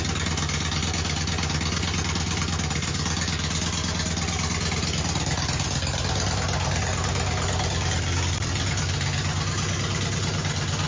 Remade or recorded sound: recorded